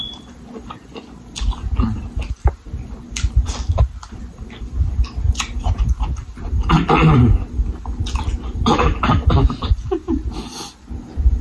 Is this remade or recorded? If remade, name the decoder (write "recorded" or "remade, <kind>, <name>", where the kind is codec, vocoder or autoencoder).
recorded